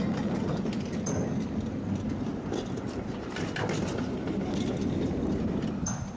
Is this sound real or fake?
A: real